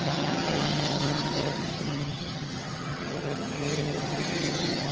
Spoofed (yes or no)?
yes